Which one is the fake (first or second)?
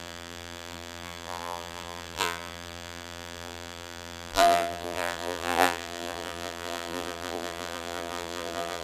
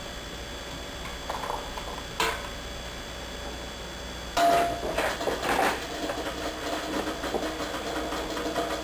first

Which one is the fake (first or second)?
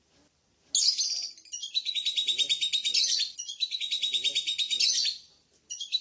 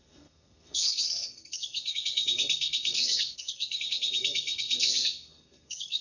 second